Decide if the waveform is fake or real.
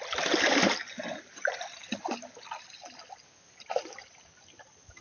real